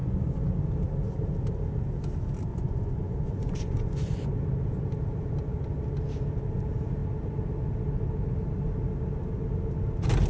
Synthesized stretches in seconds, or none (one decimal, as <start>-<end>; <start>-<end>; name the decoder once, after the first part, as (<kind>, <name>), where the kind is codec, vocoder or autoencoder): 0.0-0.5 (vocoder, Vocos); 2.5-4.3